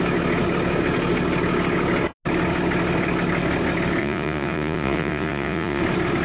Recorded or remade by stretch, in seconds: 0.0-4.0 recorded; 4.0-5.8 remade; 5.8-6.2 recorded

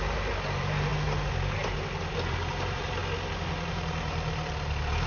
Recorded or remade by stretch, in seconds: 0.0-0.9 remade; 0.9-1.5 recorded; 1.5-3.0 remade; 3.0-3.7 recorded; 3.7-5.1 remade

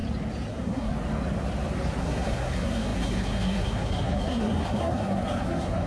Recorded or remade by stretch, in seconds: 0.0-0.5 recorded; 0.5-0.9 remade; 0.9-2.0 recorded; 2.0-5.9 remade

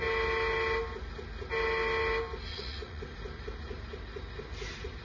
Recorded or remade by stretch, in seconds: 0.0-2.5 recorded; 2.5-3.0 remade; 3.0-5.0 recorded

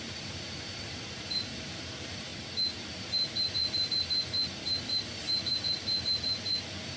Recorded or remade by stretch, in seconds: 0.0-2.3 remade; 2.3-2.8 recorded; 2.8-7.0 remade

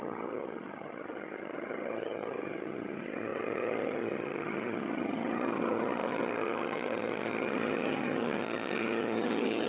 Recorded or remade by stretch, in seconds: 0.0-9.7 remade